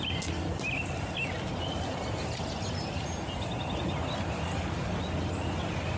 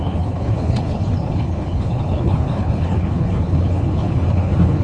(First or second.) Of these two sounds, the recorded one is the first